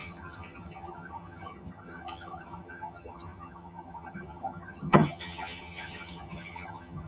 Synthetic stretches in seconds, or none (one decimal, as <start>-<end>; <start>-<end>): 0.0-7.1